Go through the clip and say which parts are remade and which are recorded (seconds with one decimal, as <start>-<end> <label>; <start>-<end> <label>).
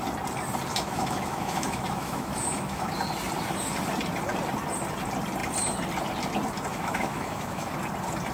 0.0-0.7 recorded; 0.7-2.9 remade; 2.9-6.7 recorded; 6.7-7.7 remade; 7.7-8.3 recorded